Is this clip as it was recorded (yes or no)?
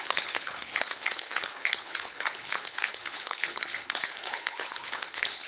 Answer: no